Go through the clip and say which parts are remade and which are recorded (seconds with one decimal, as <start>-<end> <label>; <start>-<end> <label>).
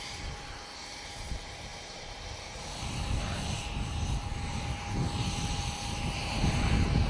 0.0-4.3 remade; 4.3-4.9 recorded; 4.9-7.1 remade